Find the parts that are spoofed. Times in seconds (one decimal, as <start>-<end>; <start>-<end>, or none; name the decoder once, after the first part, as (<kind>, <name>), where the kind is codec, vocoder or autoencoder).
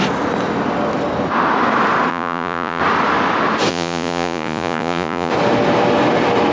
2.1-2.8 (vocoder, Vocos); 3.7-5.3